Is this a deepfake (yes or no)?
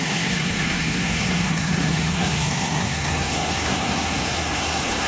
yes